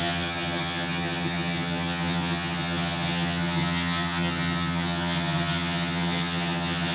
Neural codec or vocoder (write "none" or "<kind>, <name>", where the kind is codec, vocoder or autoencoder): vocoder, HiFi-GAN